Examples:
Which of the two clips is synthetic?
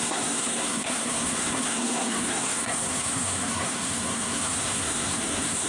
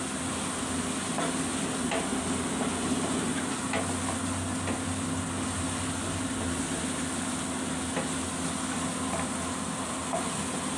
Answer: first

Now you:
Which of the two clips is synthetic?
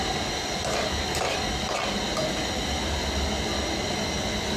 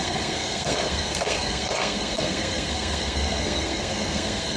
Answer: second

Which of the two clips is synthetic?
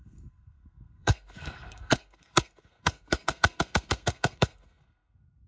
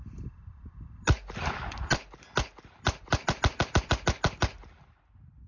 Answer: first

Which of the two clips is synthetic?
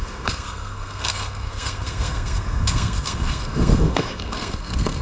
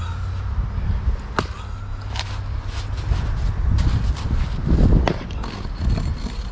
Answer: first